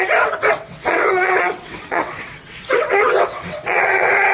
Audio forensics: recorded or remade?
remade